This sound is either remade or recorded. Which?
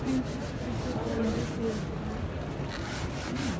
recorded